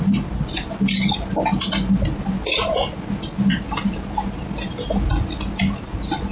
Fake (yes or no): no